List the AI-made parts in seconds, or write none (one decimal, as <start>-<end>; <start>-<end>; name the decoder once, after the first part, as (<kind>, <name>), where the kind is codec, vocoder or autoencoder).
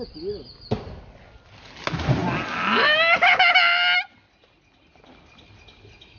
none